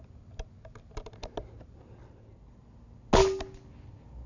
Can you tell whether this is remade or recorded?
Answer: recorded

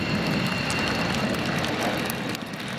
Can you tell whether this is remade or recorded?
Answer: recorded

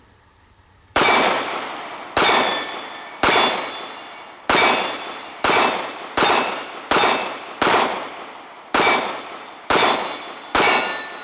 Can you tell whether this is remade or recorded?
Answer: remade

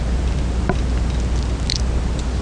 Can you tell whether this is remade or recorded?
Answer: recorded